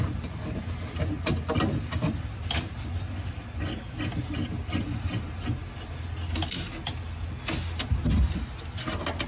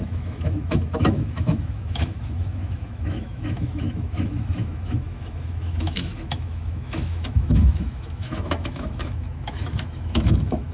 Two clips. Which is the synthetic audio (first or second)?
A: second